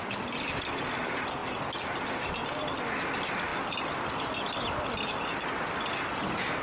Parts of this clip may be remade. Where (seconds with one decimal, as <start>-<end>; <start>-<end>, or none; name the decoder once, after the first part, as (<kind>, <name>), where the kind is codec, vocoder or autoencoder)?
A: none